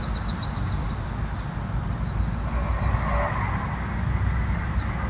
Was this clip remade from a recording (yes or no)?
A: no